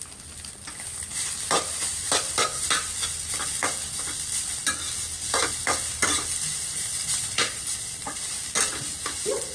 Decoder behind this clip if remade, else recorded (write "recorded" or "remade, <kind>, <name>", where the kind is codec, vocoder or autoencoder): recorded